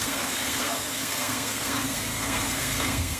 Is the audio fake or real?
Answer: fake